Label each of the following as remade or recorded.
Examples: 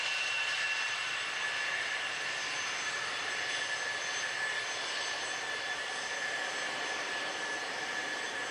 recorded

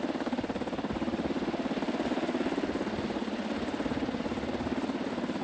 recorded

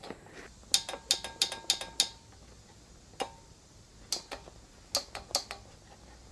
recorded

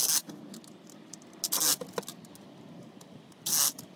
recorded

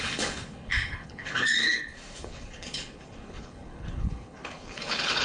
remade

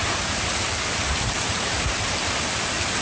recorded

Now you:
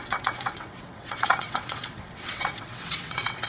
remade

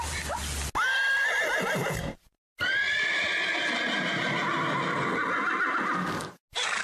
recorded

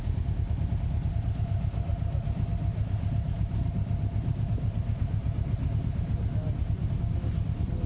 recorded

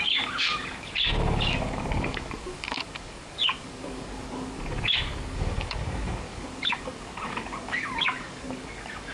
remade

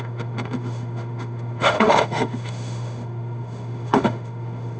remade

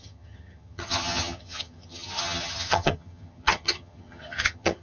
remade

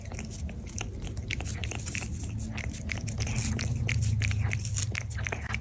recorded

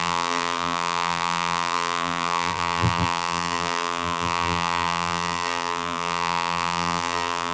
remade